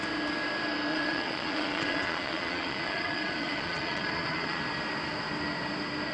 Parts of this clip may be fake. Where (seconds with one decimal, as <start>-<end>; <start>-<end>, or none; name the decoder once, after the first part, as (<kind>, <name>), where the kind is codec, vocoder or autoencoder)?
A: 0.9-4.6 (vocoder, Vocos)